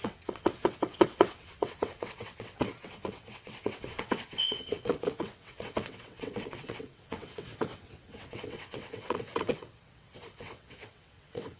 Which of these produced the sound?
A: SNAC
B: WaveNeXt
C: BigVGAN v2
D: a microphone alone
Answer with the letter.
B